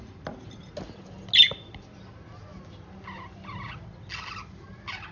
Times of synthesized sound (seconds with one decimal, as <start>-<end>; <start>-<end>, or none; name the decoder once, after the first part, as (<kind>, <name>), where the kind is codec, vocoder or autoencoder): none